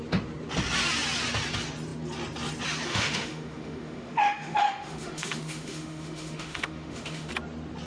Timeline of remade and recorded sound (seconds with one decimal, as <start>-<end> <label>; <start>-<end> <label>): 0.0-2.9 recorded; 2.9-7.3 remade; 7.3-7.9 recorded